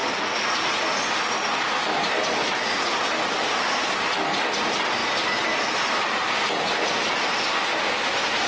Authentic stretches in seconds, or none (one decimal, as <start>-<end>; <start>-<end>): 0.8-2.4; 2.9-8.5